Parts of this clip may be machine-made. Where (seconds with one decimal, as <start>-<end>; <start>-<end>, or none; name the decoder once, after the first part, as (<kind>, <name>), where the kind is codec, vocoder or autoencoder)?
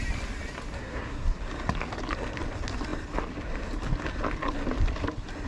0.8-1.4 (codec, SNAC)